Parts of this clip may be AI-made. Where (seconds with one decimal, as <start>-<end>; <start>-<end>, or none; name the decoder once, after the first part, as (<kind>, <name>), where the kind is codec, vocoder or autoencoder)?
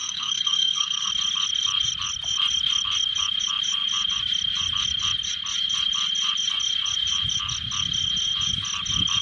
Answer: 0.0-1.1 (codec, SNAC)